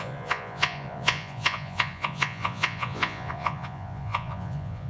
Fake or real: fake